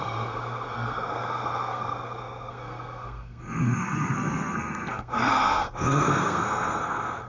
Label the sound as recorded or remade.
remade